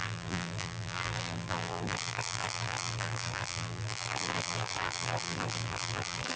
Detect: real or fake fake